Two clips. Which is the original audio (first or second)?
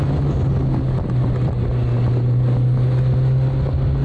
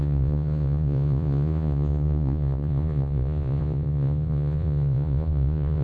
first